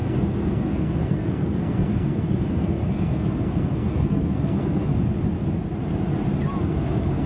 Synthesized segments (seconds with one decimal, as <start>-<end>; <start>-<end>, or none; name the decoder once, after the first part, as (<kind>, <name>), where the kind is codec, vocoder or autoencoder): 0.0-4.9 (codec, SNAC); 6.6-7.3

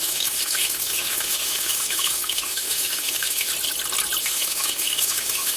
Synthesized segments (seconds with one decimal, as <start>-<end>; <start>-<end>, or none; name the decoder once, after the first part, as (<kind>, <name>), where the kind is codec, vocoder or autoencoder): 0.0-3.5 (autoencoder, DAC-VAE); 4.2-5.6

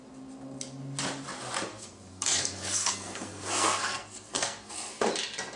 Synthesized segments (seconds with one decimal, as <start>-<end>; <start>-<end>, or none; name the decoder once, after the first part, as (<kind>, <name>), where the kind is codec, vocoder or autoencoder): 1.7-5.1 (codec, SNAC)

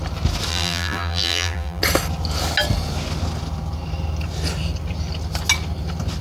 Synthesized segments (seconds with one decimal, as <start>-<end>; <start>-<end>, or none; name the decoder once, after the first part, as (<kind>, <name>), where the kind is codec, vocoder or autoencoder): 0.5-1.8 (vocoder, BigVGAN v2)

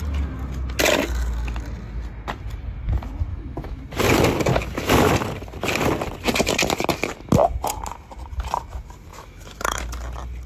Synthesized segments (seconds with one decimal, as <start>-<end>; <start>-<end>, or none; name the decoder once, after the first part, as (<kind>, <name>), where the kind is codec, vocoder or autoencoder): 3.3-3.8 (autoencoder, DAC-VAE); 9.1-9.8

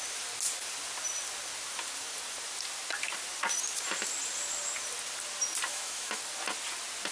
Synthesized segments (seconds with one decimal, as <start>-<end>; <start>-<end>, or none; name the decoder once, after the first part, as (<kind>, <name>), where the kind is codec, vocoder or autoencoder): 5.7-6.2 (autoencoder, DAC-VAE)

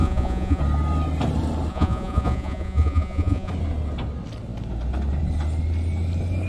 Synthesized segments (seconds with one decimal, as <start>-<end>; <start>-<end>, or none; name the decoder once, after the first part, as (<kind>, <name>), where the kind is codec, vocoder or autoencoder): 0.0-0.6 (vocoder, Vocos); 1.7-3.5